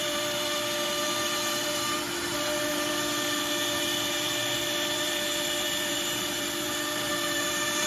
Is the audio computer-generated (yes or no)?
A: yes